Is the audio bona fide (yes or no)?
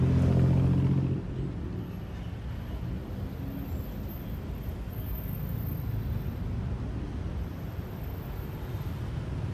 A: yes